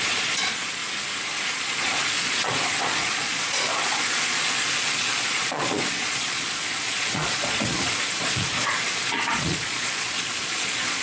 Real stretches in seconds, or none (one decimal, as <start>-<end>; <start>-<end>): 0.8-1.5